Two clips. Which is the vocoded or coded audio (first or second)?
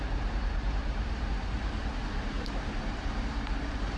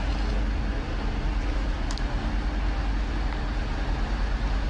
first